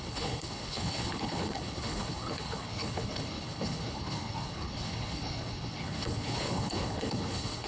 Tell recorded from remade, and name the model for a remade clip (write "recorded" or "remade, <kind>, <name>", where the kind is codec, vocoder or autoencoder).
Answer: remade, codec, HILCodec